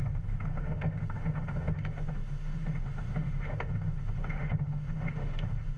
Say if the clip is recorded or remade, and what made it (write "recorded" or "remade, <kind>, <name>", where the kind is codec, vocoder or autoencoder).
remade, autoencoder, DAC-VAE